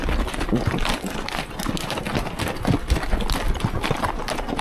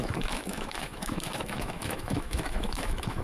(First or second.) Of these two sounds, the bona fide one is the first